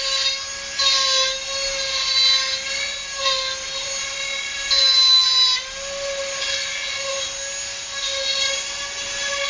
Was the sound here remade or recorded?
recorded